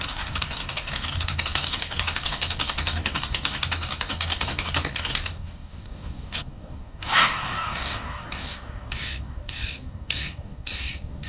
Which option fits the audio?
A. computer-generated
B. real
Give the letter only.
A